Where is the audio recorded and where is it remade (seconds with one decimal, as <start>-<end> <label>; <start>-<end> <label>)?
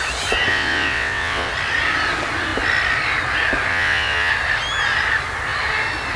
0.0-0.5 recorded; 0.5-1.5 remade; 1.5-3.7 recorded; 3.7-4.3 remade; 4.3-6.2 recorded